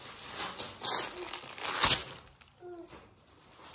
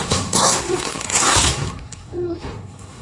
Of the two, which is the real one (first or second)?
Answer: first